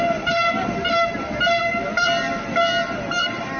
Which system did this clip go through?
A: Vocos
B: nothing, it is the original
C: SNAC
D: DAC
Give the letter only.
B